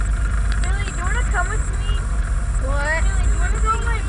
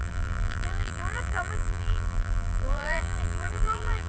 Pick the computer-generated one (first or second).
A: second